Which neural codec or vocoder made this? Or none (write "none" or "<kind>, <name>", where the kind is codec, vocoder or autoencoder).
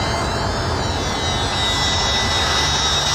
none